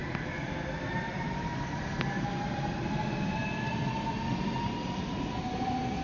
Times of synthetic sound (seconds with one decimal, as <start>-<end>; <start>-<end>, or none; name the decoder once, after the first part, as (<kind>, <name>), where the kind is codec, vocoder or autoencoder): 0.0-2.8 (vocoder, BigVGAN v2)